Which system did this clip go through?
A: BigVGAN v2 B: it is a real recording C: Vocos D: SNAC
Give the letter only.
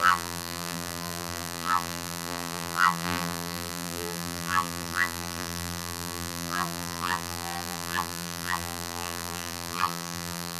A